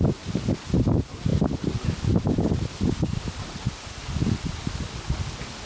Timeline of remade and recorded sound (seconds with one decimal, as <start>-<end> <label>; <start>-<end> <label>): 0.0-5.7 recorded